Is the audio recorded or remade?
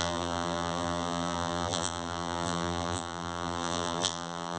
remade